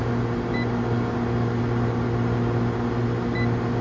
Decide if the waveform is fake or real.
real